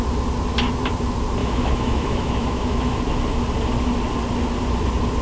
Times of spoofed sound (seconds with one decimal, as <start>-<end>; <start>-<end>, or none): 1.4-3.0